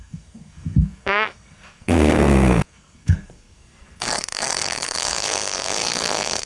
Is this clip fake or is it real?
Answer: fake